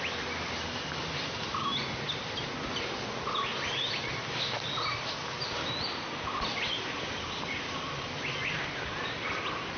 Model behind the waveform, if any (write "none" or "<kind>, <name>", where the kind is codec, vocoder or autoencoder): none